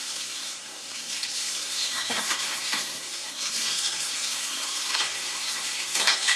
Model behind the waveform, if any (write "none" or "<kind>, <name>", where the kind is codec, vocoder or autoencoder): codec, SNAC